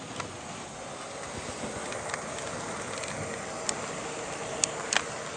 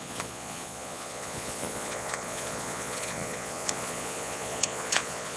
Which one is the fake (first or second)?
second